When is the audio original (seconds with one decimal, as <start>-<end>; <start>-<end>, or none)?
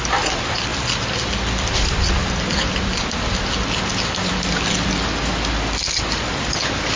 0.0-0.7; 4.9-7.0